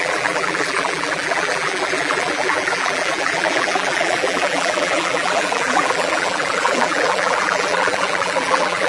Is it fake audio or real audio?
fake